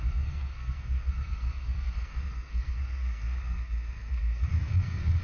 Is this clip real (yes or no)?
no